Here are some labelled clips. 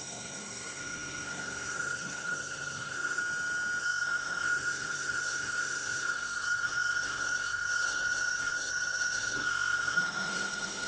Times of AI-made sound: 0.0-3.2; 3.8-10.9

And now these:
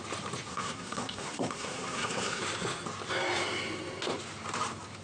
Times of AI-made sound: 0.5-2.4